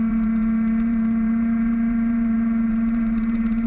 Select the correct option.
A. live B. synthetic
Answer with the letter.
B